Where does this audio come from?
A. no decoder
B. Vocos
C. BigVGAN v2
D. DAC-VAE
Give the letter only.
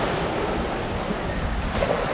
C